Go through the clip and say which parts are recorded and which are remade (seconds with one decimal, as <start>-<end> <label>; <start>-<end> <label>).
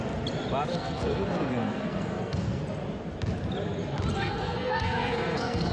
0.0-0.7 recorded; 0.7-2.6 remade; 2.6-4.1 recorded; 4.1-5.7 remade